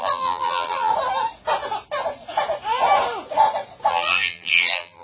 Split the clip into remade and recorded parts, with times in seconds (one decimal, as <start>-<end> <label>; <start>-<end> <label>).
0.0-0.9 remade; 0.9-3.9 recorded; 3.9-5.0 remade